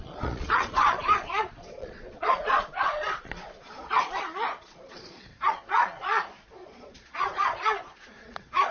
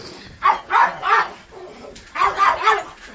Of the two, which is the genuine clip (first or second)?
second